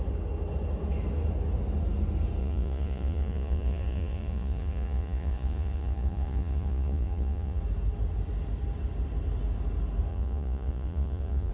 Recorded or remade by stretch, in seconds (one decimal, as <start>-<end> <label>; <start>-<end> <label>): 0.0-2.4 recorded; 2.4-7.6 remade; 7.6-10.1 recorded; 10.1-11.5 remade